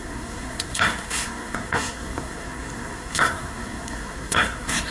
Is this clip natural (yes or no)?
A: no